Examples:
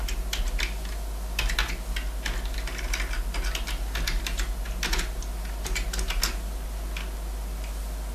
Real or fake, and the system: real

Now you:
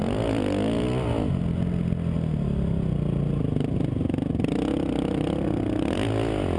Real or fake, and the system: real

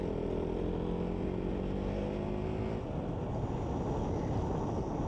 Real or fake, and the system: real